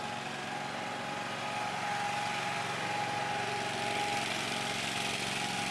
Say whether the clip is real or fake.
real